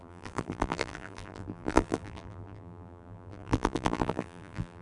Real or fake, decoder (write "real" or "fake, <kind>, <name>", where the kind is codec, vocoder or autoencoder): fake, vocoder, BigVGAN v2